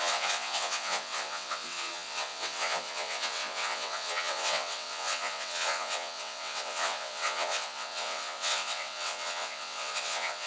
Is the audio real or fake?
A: fake